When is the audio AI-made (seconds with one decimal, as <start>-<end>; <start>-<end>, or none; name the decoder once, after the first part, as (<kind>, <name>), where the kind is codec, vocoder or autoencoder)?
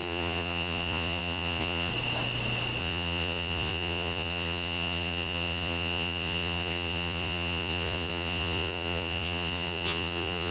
0.0-1.9 (vocoder, Vocos); 2.8-10.5